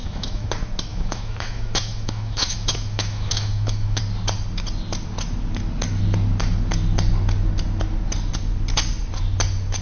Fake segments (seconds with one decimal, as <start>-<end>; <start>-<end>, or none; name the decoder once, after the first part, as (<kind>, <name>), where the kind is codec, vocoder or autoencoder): 0.0-0.5 (autoencoder, DAC-VAE); 0.9-4.0